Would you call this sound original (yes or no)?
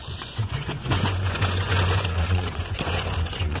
no